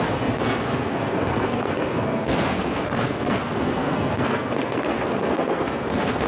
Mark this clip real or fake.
fake